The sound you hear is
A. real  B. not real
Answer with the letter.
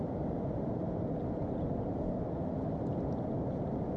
A